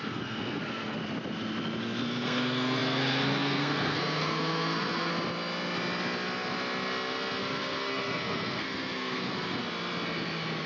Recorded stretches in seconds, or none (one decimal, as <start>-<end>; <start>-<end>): 1.0-1.8; 5.1-7.4; 9.6-10.7